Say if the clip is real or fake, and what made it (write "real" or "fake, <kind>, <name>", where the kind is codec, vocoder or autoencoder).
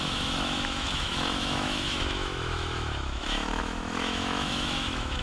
fake, autoencoder, DAC-VAE